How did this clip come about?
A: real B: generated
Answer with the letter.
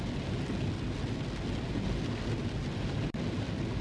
A